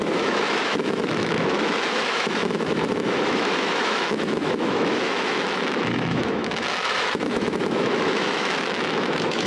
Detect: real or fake fake